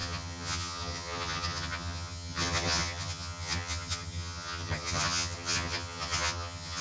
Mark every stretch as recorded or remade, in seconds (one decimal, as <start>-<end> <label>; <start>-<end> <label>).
0.0-6.8 remade